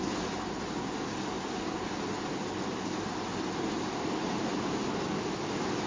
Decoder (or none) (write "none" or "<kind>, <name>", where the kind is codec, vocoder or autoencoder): none